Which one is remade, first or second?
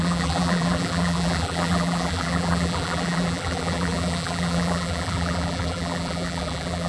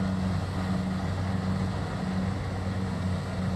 first